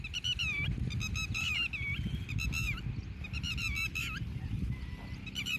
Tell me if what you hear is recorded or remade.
recorded